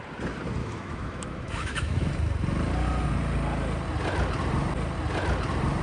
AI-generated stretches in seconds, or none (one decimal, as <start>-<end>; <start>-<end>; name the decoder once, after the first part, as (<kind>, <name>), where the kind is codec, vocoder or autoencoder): 0.6-2.1 (autoencoder, DAC-VAE)